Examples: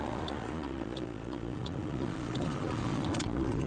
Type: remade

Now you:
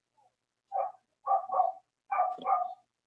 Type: recorded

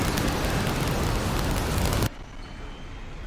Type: recorded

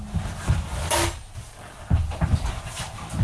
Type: recorded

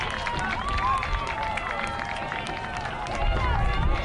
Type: recorded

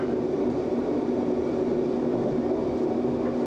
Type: recorded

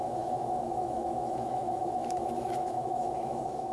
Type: remade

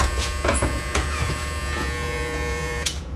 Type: remade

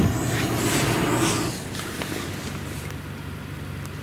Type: recorded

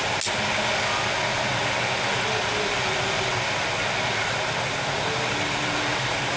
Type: recorded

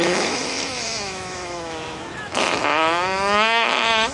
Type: remade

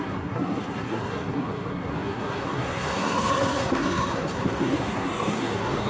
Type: remade